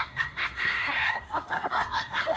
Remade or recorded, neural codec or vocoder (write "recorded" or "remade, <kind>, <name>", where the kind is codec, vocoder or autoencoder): remade, codec, SNAC